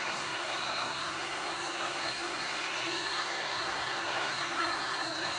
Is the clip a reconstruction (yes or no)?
yes